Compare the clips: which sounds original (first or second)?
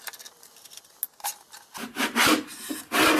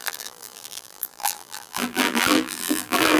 first